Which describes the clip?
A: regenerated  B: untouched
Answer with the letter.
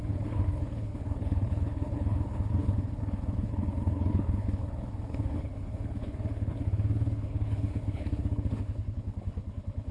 A